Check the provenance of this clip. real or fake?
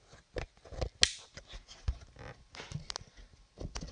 real